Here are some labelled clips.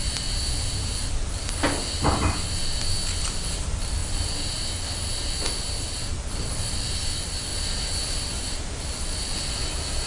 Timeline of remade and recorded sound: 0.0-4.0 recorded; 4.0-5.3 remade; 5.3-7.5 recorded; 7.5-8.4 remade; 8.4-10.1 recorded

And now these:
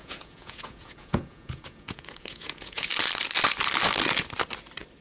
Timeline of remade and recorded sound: 0.0-2.9 remade; 2.9-5.0 recorded

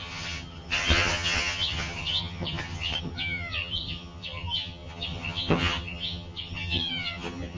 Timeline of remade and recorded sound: 0.0-7.6 remade

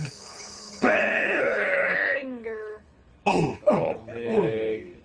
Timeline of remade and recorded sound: 0.0-5.0 remade

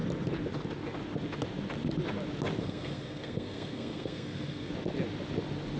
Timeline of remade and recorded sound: 0.0-2.6 recorded; 2.6-4.7 remade; 4.7-5.8 recorded

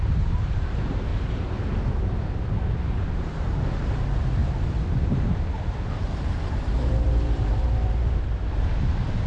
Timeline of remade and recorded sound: 0.0-1.1 remade; 1.1-3.1 recorded; 3.1-4.4 remade; 4.4-6.0 recorded; 6.0-9.3 remade